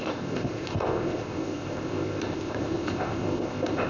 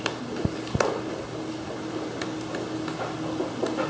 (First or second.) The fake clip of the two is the first